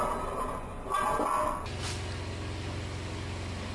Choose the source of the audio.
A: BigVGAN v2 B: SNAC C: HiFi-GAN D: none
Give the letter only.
D